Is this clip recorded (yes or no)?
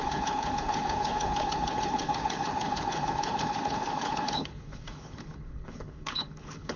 no